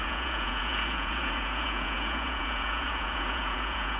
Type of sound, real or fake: fake